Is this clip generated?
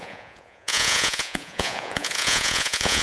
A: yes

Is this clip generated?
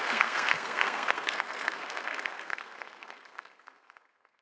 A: yes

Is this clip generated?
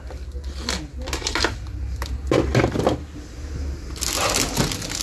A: no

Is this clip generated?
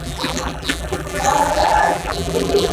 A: yes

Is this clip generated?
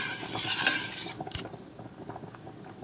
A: no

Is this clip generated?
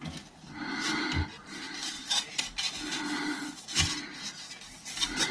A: no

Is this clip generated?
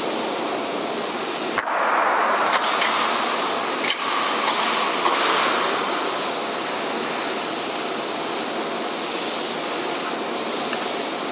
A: no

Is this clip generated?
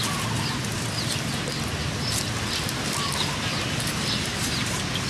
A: no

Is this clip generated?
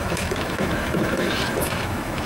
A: yes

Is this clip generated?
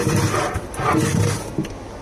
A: no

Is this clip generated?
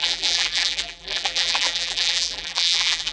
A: yes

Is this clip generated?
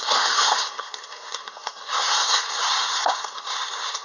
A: yes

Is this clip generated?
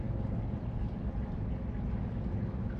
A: no